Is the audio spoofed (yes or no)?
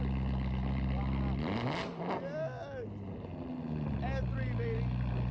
no